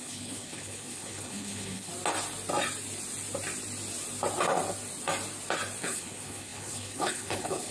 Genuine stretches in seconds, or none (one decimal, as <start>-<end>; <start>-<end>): 1.9-5.8